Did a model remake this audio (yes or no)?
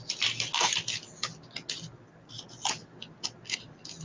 no